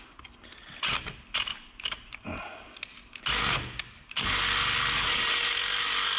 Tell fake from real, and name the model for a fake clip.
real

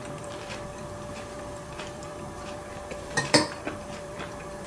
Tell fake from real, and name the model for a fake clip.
fake, vocoder, BigVGAN v2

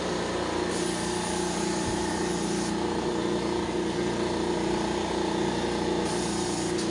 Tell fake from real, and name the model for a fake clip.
real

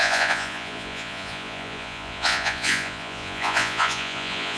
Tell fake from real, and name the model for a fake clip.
fake, vocoder, Vocos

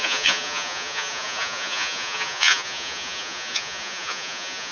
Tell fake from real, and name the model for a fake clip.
fake, vocoder, Vocos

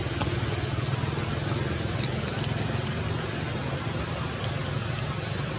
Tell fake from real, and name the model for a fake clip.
real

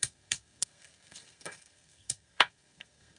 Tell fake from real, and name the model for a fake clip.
fake, codec, SNAC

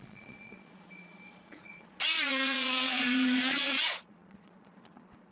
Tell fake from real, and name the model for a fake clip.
fake, vocoder, Vocos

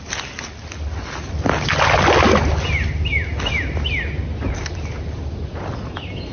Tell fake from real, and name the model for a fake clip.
real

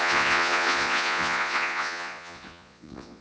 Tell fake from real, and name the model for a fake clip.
fake, vocoder, Vocos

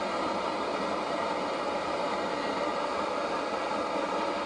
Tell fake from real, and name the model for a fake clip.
real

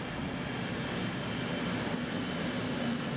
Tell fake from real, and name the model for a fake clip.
real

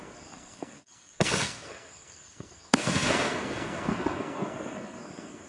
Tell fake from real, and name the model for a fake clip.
fake, codec, SNAC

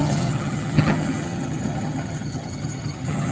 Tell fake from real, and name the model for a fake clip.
fake, vocoder, HiFi-GAN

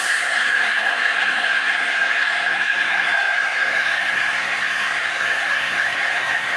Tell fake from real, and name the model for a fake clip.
fake, codec, SNAC